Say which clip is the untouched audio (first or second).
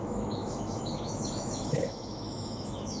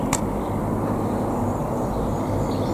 second